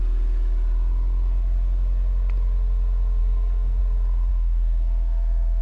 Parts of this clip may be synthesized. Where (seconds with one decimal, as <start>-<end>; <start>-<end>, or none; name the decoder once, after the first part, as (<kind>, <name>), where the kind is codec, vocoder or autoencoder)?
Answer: 3.2-3.8 (codec, SNAC); 4.3-5.6